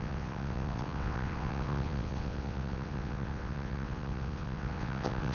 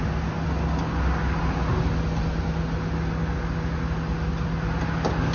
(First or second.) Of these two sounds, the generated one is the first